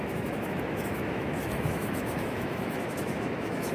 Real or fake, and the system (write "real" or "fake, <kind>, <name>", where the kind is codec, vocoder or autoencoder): fake, autoencoder, DAC-VAE